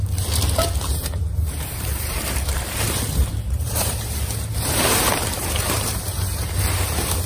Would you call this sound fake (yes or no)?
yes